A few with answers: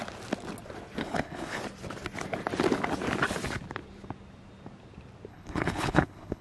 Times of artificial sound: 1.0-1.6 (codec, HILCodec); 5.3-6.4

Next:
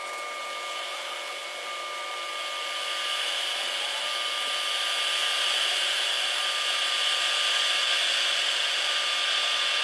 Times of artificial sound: none

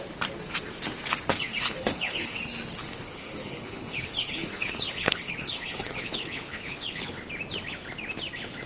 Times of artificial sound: 1.3-2.4 (codec, HILCodec); 2.8-7.1

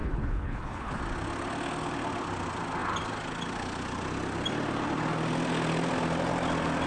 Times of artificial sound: 0.0-1.0 (codec, HILCodec)

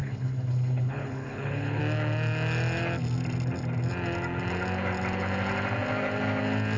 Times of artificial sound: 0.0-1.8 (codec, HILCodec)

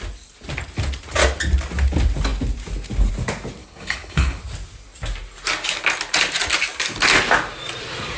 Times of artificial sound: 3.6-4.4 (codec, HILCodec)

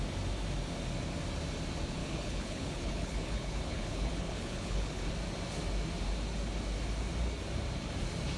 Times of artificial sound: 2.0-5.1 (codec, HILCodec)

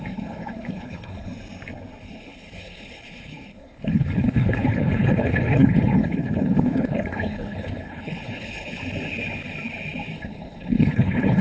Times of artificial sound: 0.0-1.3 (codec, HILCodec); 2.0-8.8; 10.2-11.4